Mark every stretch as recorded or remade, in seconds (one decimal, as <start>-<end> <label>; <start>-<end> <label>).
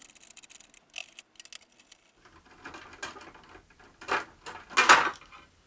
0.0-5.7 recorded